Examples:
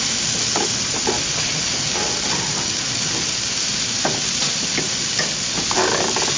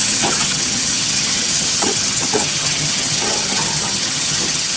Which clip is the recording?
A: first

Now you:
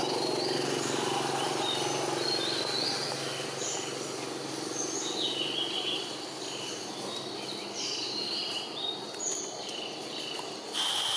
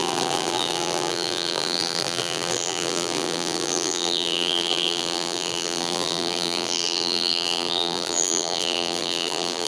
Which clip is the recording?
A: first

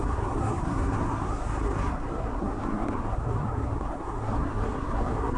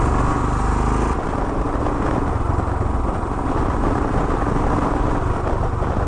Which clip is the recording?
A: second